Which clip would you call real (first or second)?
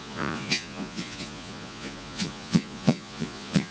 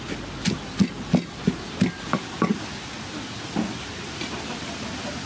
second